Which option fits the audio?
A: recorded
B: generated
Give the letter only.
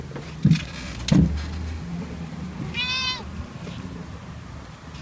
A